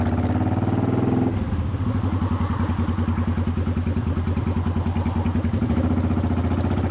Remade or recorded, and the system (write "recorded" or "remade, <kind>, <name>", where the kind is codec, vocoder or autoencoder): recorded